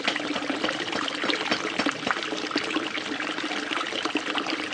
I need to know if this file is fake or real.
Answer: real